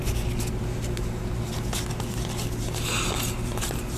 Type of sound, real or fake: real